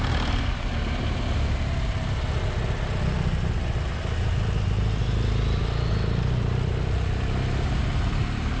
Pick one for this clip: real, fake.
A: real